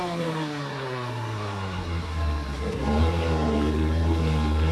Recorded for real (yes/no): no